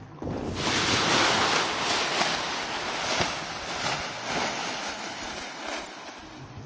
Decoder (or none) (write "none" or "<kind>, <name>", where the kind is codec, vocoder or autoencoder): none